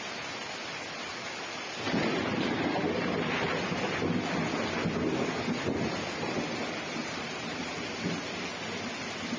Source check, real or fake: real